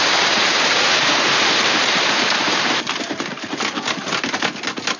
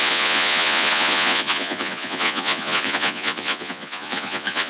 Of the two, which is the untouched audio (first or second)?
first